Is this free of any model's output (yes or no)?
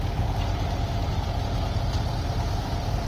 no